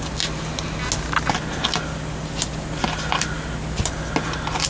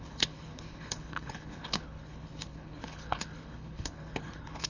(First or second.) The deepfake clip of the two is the second